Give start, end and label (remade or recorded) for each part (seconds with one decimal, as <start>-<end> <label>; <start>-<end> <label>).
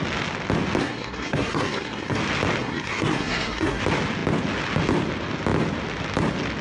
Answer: 0.0-0.8 recorded; 0.8-2.2 remade; 2.2-2.6 recorded; 2.6-3.8 remade; 3.8-6.6 recorded